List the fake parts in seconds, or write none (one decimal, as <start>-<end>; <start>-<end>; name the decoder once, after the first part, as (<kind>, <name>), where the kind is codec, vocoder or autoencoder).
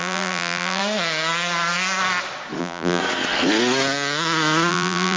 0.0-0.8 (vocoder, BigVGAN v2); 2.6-3.0; 4.7-5.2